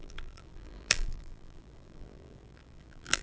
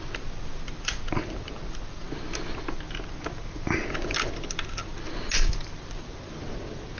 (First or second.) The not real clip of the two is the first